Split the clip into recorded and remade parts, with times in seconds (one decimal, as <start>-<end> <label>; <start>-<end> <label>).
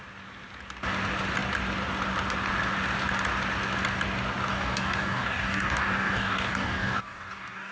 0.0-4.5 recorded; 4.5-7.7 remade